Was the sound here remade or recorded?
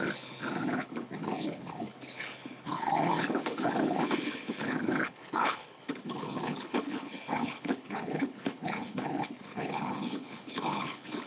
remade